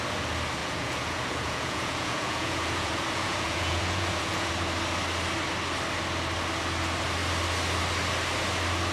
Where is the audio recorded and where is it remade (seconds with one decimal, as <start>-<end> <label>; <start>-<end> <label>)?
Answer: 0.0-0.6 recorded; 0.6-4.5 remade; 4.5-8.9 recorded